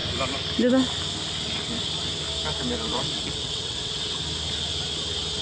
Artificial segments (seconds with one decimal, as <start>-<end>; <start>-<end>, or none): 2.9-4.2

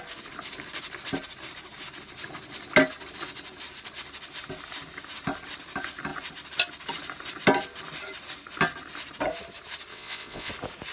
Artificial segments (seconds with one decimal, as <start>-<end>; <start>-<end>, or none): 9.9-10.5

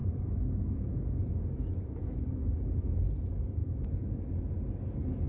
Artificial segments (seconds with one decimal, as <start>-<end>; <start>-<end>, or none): none

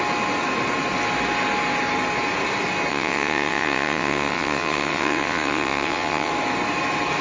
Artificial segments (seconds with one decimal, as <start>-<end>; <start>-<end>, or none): 2.9-6.3

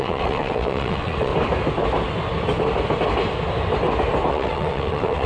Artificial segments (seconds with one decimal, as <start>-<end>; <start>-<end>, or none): 0.0-1.3; 4.3-5.3

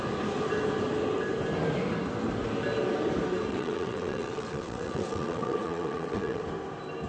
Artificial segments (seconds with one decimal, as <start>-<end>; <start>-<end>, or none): 3.5-6.4